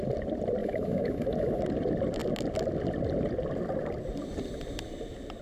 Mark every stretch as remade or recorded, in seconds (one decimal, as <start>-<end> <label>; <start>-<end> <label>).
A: 0.0-0.6 recorded; 0.6-1.6 remade; 1.6-5.4 recorded